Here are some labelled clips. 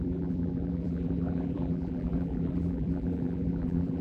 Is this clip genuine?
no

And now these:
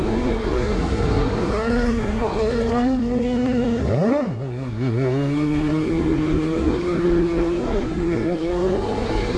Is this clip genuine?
no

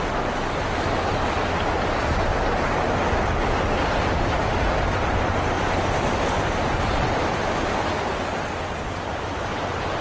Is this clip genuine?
yes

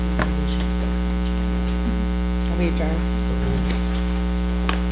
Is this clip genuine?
yes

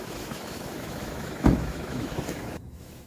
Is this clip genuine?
no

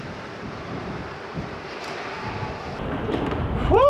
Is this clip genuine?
no